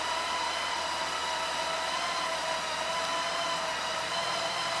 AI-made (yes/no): no